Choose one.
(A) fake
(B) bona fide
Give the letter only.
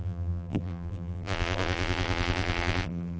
A